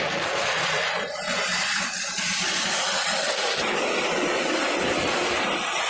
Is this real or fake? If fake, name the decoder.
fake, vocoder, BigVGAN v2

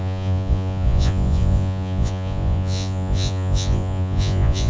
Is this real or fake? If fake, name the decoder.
fake, vocoder, Vocos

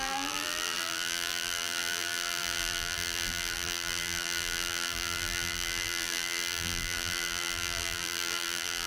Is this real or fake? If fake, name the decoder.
fake, vocoder, BigVGAN v2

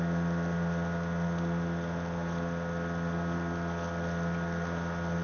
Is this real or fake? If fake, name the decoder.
real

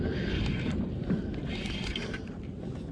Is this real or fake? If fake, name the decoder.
real